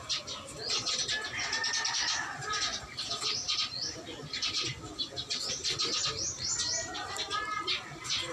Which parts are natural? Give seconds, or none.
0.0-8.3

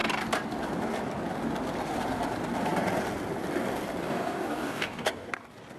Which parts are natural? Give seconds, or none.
0.0-4.0; 5.3-5.8